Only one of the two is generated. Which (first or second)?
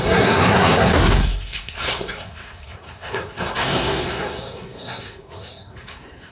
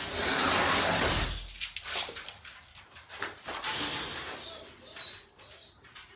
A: first